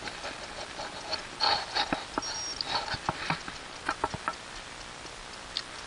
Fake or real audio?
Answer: real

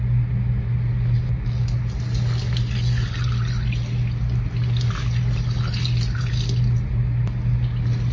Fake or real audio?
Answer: real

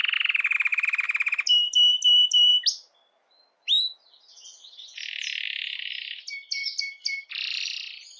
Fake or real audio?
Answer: real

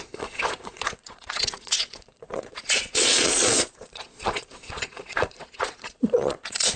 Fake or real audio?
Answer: fake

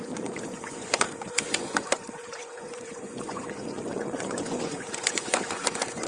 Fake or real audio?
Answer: fake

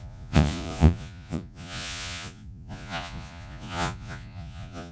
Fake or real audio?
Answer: fake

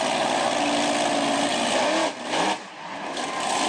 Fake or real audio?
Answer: real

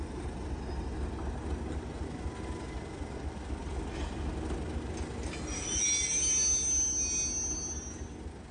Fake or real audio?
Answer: real